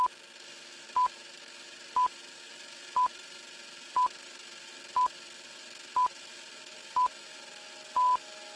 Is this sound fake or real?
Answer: real